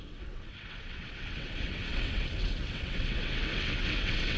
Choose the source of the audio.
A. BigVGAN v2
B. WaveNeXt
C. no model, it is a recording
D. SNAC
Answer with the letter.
B